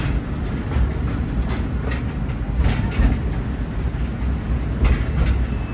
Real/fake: real